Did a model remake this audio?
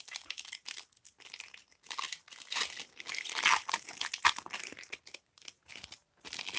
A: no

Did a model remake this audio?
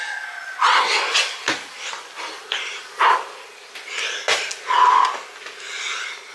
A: no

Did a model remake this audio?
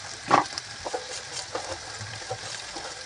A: no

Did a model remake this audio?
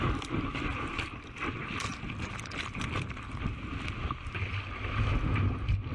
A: no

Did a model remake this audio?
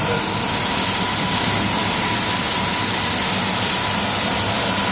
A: no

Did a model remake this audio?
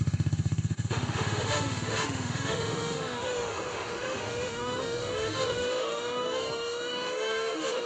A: yes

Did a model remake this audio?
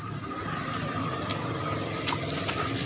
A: yes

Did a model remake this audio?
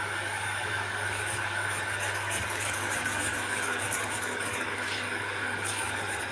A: yes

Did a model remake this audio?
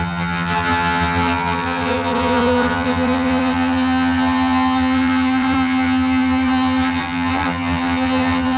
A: yes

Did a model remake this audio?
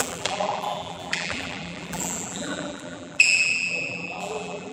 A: yes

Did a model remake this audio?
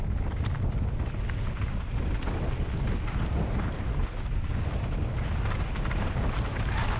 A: no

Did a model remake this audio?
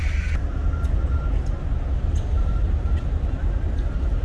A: no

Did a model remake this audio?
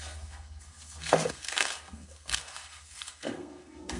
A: yes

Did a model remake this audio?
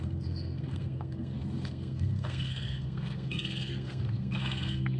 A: yes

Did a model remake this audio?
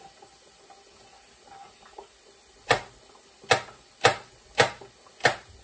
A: no